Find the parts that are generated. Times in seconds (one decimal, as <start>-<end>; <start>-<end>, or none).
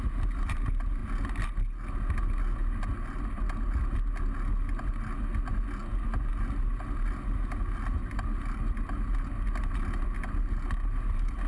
none